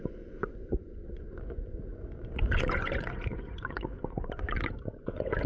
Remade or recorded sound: remade